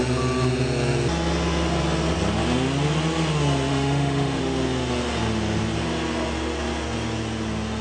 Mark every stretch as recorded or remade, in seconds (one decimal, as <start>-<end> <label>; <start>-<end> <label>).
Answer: 0.0-3.7 recorded; 3.7-4.4 remade; 4.4-7.8 recorded